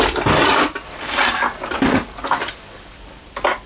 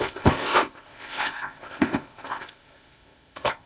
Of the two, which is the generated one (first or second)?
second